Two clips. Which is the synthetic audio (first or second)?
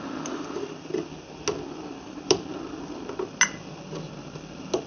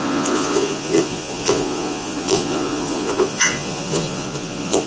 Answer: second